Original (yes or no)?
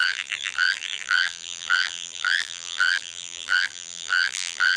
no